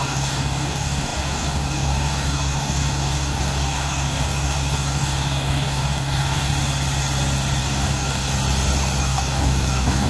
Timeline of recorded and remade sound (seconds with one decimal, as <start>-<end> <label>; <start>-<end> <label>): 0.0-6.5 remade; 6.5-7.6 recorded; 7.6-8.3 remade; 8.3-9.0 recorded; 9.0-10.1 remade